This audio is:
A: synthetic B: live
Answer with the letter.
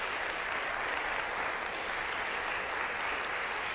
B